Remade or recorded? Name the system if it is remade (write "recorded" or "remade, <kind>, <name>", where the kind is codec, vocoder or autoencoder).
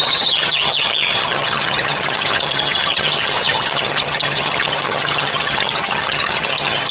remade, vocoder, HiFi-GAN